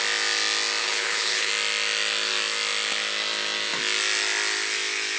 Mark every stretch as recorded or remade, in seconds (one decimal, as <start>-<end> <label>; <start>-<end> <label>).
0.0-0.8 recorded; 0.8-1.5 remade; 1.5-5.2 recorded